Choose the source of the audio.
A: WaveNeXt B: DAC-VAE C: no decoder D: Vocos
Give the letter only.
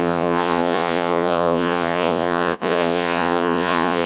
D